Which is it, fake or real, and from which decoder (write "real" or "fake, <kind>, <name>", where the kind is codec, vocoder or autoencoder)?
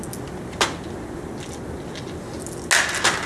real